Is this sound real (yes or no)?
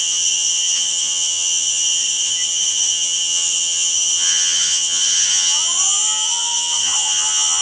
no